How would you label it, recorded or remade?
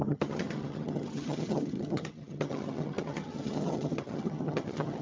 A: remade